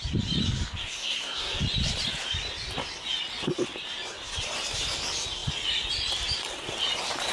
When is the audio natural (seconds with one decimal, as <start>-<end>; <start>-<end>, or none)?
0.0-0.8; 1.6-7.3